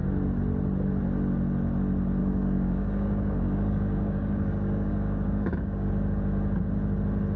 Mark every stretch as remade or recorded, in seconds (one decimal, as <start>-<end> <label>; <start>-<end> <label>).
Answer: 0.0-2.2 recorded; 2.2-5.9 remade; 5.9-7.4 recorded